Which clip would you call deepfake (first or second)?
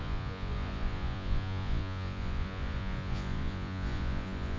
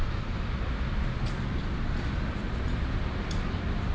first